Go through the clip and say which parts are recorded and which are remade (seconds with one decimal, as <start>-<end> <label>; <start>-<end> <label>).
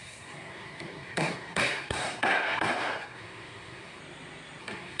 0.0-4.0 remade; 4.0-4.6 recorded; 4.6-5.0 remade